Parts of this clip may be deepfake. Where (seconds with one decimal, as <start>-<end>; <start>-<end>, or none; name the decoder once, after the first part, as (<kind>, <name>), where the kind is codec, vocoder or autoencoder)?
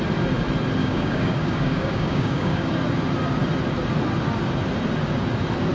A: 0.8-2.7 (codec, DAC)